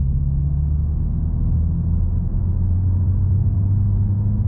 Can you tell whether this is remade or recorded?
recorded